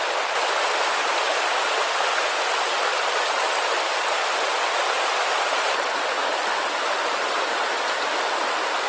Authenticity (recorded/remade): recorded